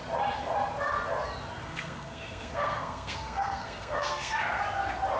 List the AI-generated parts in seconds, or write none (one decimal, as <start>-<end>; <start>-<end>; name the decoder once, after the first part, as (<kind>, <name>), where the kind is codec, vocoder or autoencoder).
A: 1.6-4.6 (codec, SNAC)